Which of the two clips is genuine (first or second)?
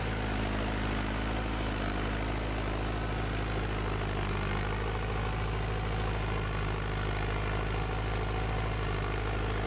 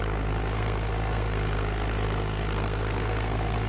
first